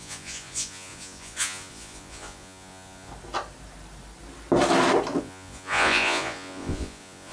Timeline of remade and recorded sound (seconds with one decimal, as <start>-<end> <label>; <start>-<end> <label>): 0.0-3.1 remade; 3.1-5.2 recorded; 5.2-7.3 remade